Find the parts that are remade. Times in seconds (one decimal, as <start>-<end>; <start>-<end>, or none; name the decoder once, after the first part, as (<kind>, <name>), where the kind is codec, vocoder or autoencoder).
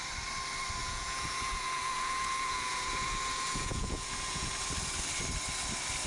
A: 0.8-4.5 (vocoder, Vocos)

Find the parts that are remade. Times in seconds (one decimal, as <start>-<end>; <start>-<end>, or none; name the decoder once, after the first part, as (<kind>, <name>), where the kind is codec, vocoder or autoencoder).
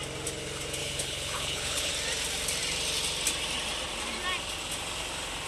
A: 0.8-1.9 (codec, HILCodec)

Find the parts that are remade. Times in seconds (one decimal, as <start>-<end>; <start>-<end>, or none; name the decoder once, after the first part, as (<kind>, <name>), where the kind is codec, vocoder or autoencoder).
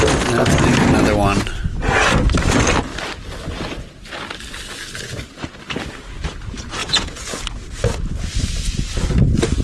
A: 6.8-7.4 (vocoder, Vocos)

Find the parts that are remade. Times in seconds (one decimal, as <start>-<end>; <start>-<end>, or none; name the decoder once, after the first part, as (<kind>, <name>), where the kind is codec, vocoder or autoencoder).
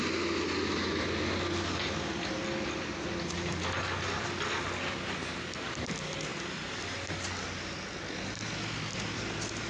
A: none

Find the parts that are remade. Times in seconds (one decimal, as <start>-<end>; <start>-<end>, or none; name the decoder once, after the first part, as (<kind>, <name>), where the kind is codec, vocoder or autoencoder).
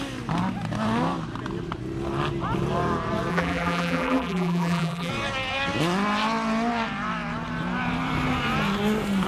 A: 3.3-5.1 (vocoder, BigVGAN v2)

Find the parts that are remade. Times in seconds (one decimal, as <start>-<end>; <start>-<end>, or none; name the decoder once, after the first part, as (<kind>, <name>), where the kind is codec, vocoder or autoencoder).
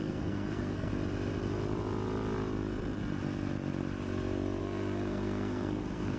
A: 0.0-0.9 (codec, SNAC); 4.6-6.2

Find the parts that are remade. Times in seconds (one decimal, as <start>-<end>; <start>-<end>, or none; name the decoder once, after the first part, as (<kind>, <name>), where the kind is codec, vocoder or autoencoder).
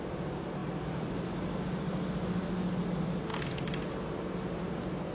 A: none